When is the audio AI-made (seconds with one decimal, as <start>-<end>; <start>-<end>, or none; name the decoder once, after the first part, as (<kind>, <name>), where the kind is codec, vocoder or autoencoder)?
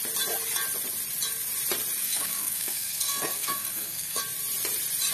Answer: 2.0-4.2 (codec, SNAC)